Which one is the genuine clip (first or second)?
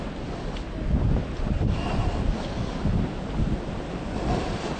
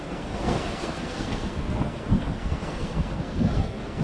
first